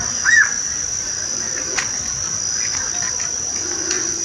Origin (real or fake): real